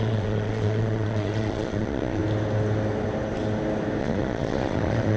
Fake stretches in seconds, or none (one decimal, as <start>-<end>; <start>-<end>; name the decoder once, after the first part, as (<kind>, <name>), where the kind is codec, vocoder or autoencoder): 0.0-2.2 (vocoder, Vocos); 4.0-5.2